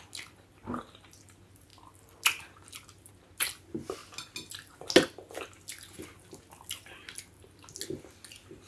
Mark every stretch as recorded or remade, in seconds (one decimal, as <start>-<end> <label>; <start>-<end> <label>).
0.0-8.7 recorded